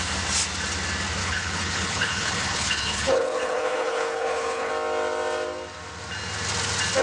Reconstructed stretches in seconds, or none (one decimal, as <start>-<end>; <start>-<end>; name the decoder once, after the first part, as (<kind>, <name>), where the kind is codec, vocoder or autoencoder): 1.2-4.7 (codec, HILCodec)